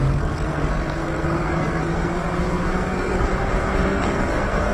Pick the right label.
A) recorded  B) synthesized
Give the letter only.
B